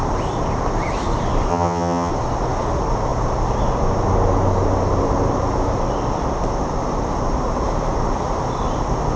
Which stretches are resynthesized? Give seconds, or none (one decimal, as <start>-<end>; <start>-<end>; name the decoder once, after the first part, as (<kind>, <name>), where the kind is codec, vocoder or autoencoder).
1.5-2.1 (vocoder, HiFi-GAN)